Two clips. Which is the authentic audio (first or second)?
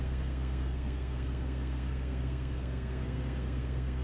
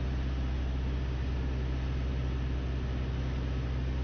second